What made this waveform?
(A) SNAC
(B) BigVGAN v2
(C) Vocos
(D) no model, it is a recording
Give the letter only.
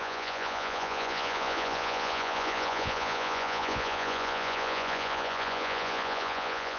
C